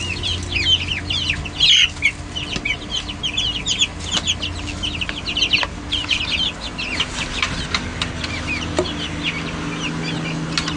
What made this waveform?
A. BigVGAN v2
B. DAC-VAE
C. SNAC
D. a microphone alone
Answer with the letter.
D